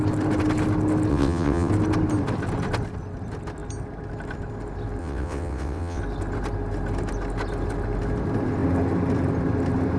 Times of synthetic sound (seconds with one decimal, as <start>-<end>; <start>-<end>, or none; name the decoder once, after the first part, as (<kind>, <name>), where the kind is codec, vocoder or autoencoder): 1.1-1.7 (vocoder, WaveNeXt); 5.0-6.0